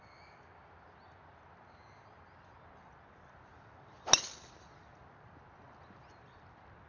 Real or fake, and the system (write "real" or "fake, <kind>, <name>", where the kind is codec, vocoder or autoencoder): real